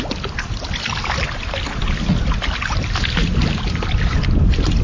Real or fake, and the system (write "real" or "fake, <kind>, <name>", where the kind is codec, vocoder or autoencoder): real